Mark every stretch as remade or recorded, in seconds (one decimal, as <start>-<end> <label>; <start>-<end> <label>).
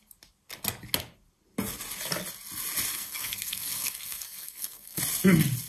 0.0-2.9 recorded; 2.9-5.0 remade; 5.0-5.7 recorded